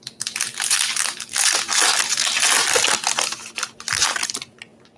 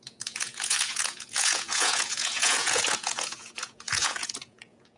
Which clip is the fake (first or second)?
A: second